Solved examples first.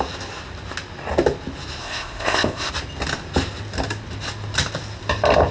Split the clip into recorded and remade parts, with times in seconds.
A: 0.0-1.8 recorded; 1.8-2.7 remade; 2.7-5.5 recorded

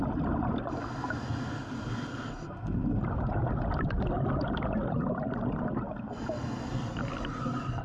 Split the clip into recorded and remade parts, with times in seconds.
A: 0.0-7.8 recorded

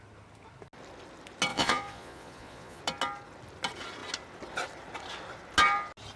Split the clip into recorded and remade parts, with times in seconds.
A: 0.0-1.5 recorded; 1.5-2.8 remade; 2.8-6.2 recorded

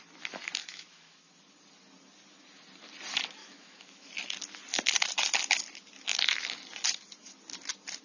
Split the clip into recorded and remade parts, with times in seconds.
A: 0.0-0.6 recorded; 0.6-1.3 remade; 1.3-3.4 recorded; 3.4-4.1 remade; 4.1-8.0 recorded